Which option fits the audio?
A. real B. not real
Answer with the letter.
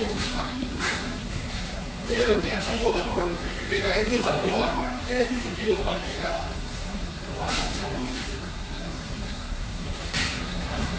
B